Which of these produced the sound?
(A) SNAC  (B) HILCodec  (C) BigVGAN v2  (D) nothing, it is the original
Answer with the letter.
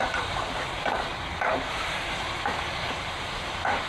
C